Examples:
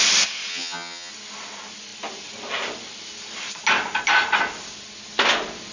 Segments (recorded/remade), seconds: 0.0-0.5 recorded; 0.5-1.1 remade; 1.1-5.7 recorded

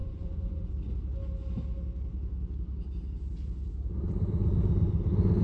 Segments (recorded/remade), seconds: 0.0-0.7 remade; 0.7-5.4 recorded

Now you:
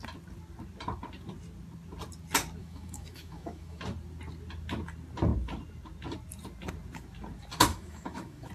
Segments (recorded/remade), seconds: 0.0-2.6 recorded; 2.6-3.8 remade; 3.8-7.7 recorded; 7.7-8.5 remade

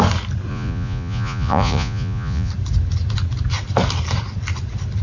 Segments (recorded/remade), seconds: 0.0-0.5 recorded; 0.5-2.5 remade; 2.5-5.0 recorded

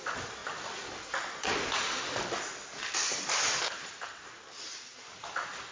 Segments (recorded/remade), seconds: 0.0-5.7 remade

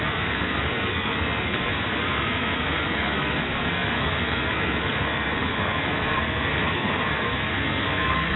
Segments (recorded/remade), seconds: 0.0-8.4 remade

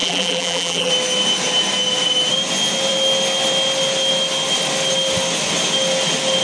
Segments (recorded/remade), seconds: 0.0-0.9 remade; 0.9-6.4 recorded